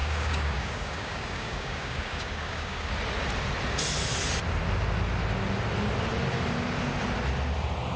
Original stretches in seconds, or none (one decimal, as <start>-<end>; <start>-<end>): 2.9-8.0